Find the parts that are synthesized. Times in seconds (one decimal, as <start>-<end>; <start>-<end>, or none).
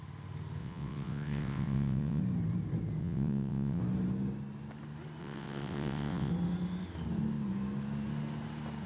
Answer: 0.6-2.2; 3.0-3.8; 5.2-6.3